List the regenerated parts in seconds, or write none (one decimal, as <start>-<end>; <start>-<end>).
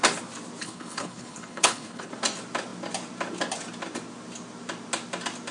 0.6-2.1